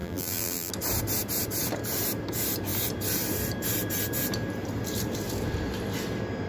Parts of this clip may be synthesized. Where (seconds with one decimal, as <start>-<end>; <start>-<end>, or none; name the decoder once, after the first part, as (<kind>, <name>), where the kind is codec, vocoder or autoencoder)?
0.0-0.7 (vocoder, BigVGAN v2)